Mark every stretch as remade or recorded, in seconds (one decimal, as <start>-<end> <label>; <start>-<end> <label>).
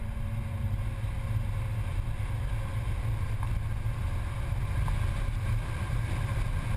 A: 0.0-6.8 recorded